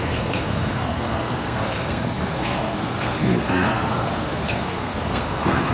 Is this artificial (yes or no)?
yes